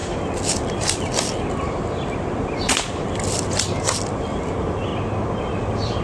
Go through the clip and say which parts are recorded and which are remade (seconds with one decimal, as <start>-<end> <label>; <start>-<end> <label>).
0.0-4.9 remade; 4.9-5.6 recorded; 5.6-6.0 remade